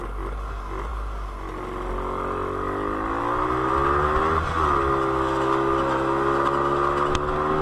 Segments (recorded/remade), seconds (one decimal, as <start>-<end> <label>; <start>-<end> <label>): 0.0-7.6 recorded